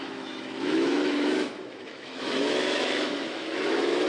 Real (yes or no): no